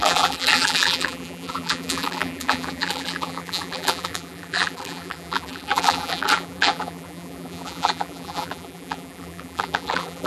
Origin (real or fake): fake